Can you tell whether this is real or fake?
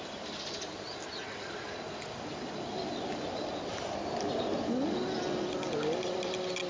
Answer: real